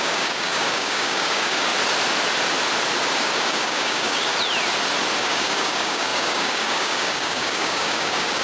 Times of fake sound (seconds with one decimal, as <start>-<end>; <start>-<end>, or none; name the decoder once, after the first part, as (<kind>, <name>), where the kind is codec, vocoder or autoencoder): 0.0-1.7 (codec, DAC); 3.2-4.3; 5.2-8.4